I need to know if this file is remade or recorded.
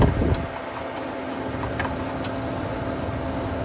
recorded